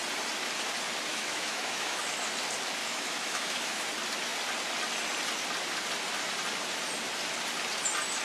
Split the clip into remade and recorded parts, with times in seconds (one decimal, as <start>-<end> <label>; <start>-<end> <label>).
0.0-1.1 recorded; 1.1-2.1 remade; 2.1-2.8 recorded; 2.8-3.9 remade; 3.9-8.2 recorded